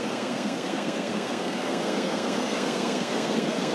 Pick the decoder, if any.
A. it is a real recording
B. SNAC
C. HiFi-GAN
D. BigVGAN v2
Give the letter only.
B